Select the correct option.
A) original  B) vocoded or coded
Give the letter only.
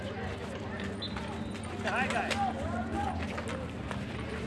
A